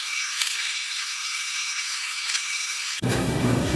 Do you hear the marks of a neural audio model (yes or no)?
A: yes